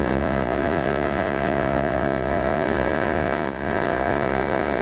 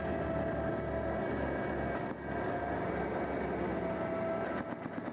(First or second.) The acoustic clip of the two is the second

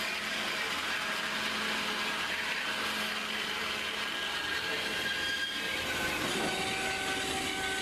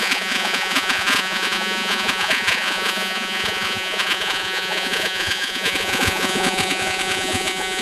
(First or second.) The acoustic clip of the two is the first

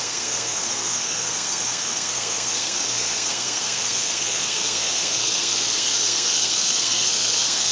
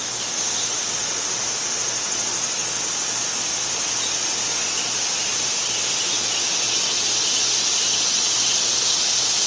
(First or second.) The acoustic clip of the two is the second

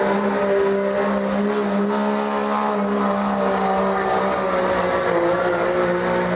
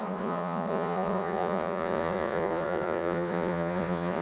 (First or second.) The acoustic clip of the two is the first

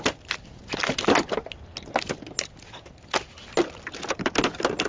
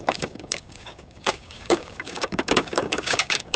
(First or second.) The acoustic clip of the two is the first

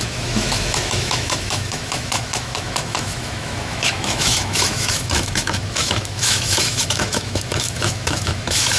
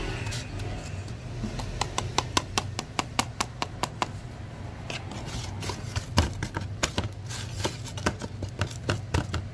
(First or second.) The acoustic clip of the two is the second